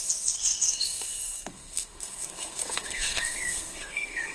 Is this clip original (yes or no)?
no